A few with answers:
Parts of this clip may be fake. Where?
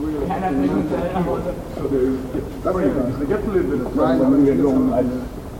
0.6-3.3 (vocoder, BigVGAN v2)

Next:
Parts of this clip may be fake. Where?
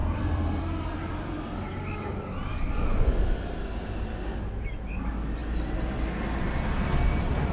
0.0-0.6 (vocoder, BigVGAN v2)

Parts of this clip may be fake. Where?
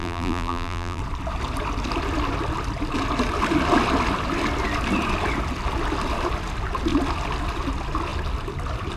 0.0-1.0 (vocoder, BigVGAN v2)